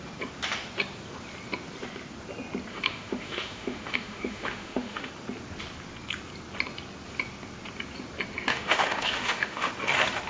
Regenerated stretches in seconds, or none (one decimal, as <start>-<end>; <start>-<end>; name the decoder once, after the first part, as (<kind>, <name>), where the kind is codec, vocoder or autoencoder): 2.7-5.1 (autoencoder, DAC-VAE); 8.5-9.7